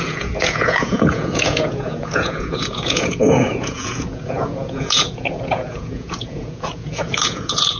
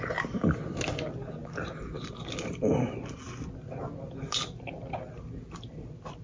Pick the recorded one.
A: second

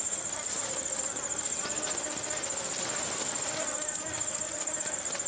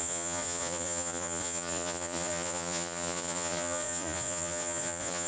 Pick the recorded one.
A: first